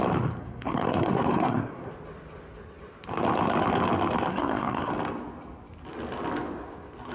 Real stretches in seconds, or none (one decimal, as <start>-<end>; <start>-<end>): 0.0-0.4; 1.9-4.3; 4.9-7.1